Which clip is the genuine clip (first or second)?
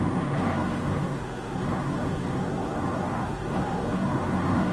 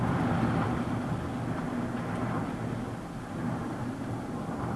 second